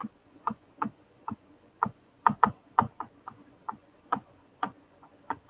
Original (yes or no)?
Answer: no